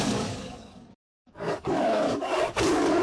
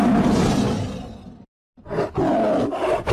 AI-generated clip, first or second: first